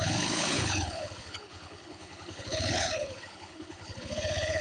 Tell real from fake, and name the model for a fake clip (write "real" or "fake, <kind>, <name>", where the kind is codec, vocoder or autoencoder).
fake, codec, HILCodec